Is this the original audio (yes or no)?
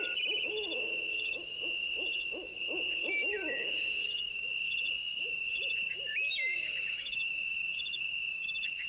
no